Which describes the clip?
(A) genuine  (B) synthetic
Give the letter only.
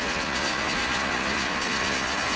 B